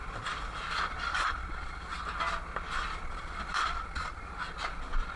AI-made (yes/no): no